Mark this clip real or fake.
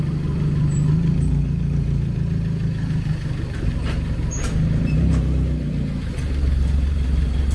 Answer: fake